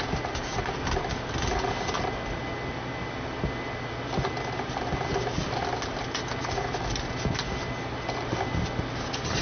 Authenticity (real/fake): real